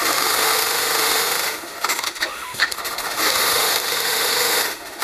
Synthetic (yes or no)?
yes